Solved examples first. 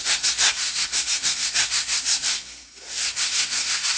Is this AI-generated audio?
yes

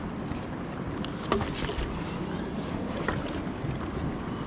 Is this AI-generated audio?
no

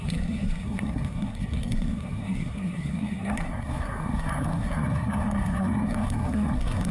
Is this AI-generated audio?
yes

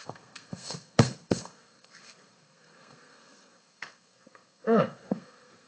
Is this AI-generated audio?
yes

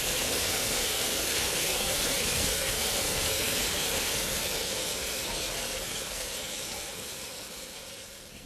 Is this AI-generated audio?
yes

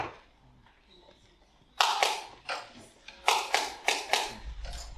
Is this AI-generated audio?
no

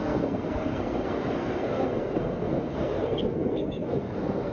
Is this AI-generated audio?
yes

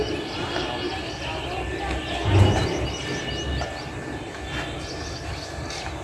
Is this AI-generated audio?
no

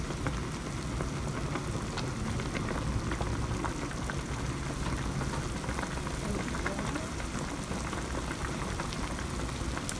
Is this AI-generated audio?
no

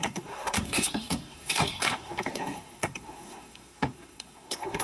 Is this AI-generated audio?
yes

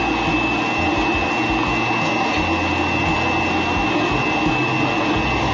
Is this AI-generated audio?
no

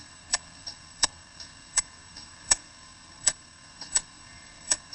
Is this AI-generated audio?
yes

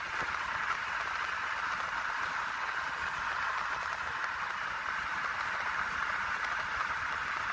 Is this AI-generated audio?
no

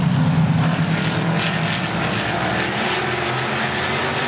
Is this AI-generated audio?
no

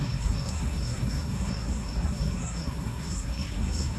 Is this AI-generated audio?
yes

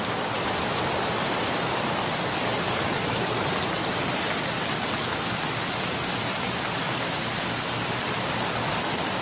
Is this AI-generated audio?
no